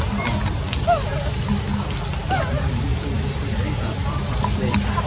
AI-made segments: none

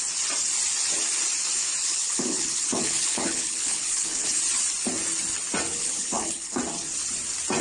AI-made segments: 1.8-4.4 (codec, HILCodec); 5.7-6.6

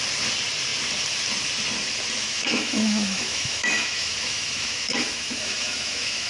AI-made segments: 2.2-6.3 (autoencoder, DAC-VAE)

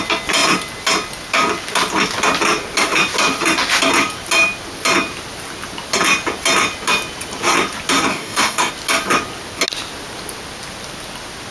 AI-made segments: 8.1-8.7 (codec, DAC)

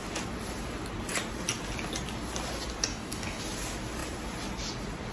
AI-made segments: 2.9-3.4 (codec, DAC)

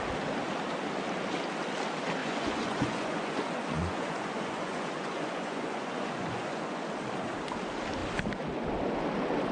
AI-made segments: 2.2-6.8 (vocoder, Vocos)